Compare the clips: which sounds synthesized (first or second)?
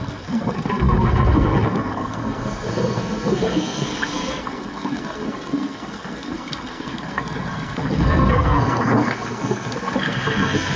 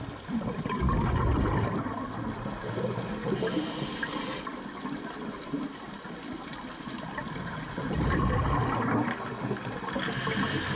first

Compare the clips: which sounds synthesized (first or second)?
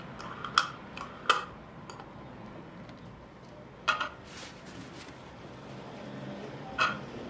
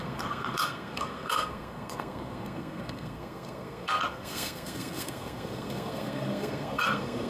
second